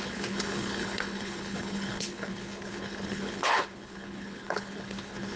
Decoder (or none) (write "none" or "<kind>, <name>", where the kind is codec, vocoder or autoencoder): codec, HILCodec